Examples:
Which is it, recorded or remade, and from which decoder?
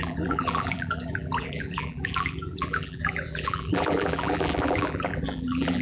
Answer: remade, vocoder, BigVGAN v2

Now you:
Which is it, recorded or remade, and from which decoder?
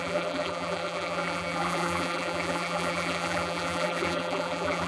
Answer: remade, vocoder, BigVGAN v2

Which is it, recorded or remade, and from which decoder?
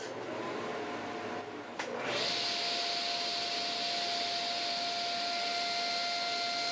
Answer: recorded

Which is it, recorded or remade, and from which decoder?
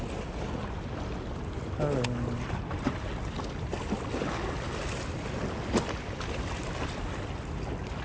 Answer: recorded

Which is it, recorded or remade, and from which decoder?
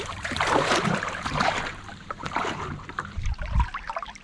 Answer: remade, vocoder, BigVGAN v2